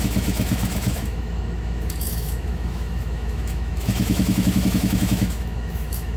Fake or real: fake